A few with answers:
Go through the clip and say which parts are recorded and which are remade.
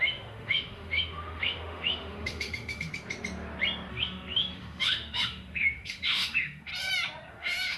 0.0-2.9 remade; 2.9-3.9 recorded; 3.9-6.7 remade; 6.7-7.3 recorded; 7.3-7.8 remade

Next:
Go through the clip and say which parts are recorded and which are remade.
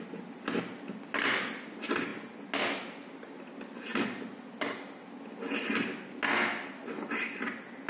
0.0-7.9 recorded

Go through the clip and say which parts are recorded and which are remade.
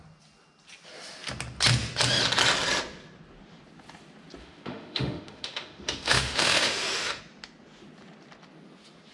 0.0-4.4 recorded; 4.4-7.2 remade; 7.2-9.1 recorded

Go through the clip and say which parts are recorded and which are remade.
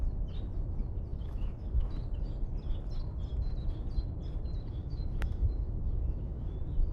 0.0-1.1 recorded; 1.1-1.7 remade; 1.7-4.8 recorded; 4.8-6.5 remade; 6.5-6.9 recorded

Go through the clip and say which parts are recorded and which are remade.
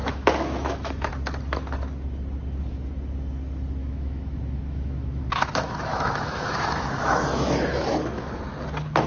0.0-1.1 remade; 1.1-3.8 recorded; 3.8-8.4 remade; 8.4-9.1 recorded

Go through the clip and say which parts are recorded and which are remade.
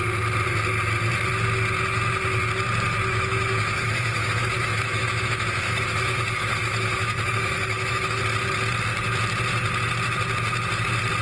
0.0-3.1 recorded; 3.1-8.2 remade; 8.2-11.2 recorded